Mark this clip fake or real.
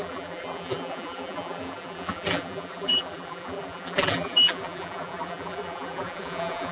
fake